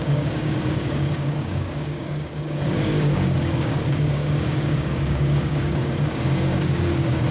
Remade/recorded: remade